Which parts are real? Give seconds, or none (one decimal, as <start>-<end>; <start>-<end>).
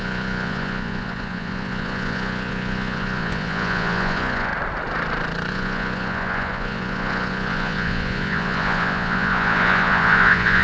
4.5-5.5